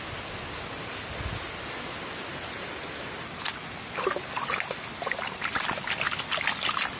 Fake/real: real